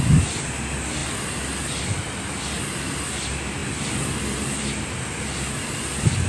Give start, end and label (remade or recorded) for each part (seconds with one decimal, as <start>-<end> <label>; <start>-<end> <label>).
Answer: 0.0-6.3 recorded